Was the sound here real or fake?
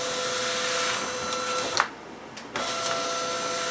real